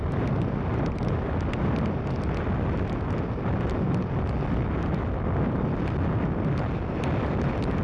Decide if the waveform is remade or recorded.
recorded